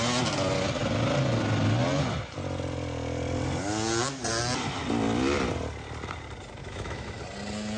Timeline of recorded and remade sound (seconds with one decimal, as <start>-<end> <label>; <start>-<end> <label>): 0.0-6.6 recorded; 6.6-7.2 remade; 7.2-7.8 recorded